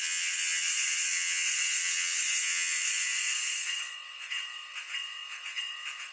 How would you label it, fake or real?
fake